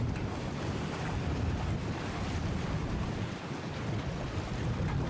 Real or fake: fake